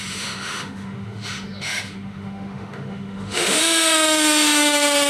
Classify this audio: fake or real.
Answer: fake